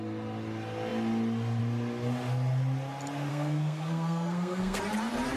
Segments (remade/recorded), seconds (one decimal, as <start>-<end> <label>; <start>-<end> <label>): 0.0-3.3 recorded; 3.3-4.8 remade; 4.8-5.4 recorded